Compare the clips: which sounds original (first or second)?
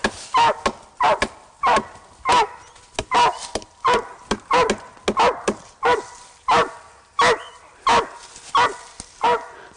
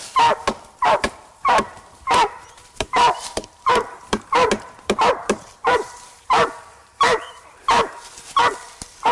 first